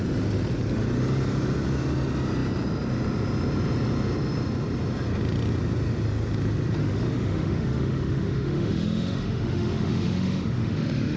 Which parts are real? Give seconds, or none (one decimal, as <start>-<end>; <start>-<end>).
0.0-6.8